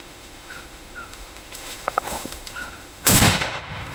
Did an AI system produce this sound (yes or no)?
yes